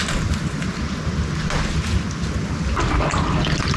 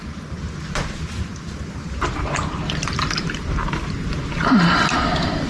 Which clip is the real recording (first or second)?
first